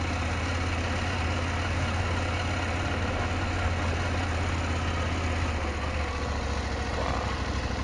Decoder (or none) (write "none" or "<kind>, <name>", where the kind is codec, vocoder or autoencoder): none